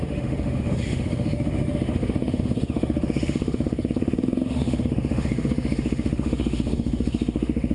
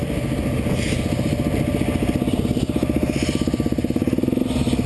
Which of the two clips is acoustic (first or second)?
second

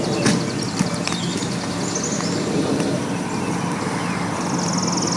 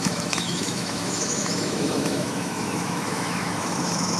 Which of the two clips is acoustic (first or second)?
first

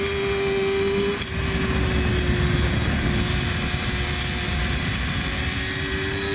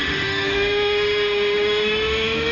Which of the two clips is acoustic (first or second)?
first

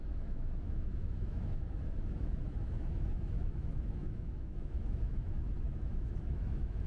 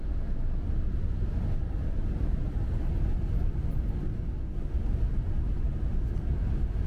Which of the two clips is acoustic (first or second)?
second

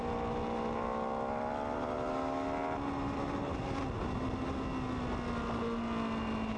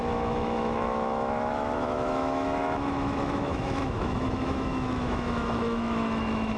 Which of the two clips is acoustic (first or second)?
first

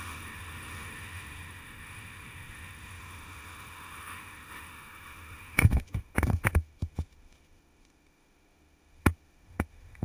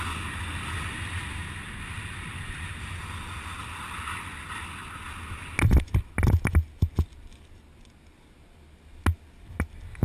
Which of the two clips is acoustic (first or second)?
second